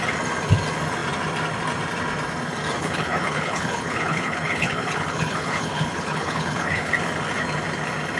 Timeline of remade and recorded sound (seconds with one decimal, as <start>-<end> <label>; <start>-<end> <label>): 0.0-2.8 recorded; 2.8-6.9 remade; 6.9-8.2 recorded